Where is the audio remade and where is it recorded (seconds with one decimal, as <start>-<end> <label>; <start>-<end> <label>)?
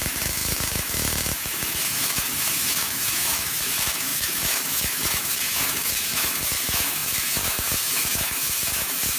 0.0-9.2 remade